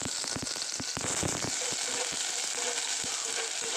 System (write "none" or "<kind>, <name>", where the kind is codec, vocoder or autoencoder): none